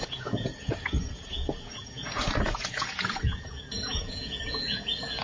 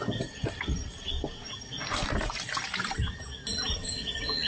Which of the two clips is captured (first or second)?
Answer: second